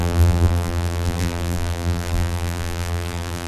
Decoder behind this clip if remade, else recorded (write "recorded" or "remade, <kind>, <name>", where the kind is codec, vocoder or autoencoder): remade, vocoder, BigVGAN v2